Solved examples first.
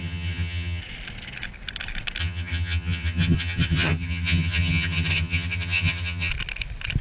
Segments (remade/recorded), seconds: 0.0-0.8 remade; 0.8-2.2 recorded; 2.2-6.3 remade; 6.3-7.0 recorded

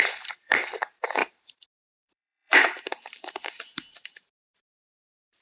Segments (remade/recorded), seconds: 0.0-5.4 remade

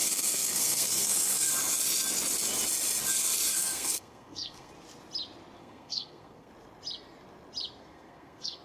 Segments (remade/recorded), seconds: 0.0-1.5 remade; 1.5-3.5 recorded; 3.5-4.7 remade; 4.7-5.6 recorded; 5.6-6.5 remade; 6.5-7.8 recorded; 7.8-8.6 remade